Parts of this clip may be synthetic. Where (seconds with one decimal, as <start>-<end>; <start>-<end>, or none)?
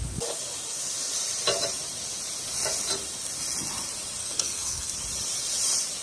4.2-4.9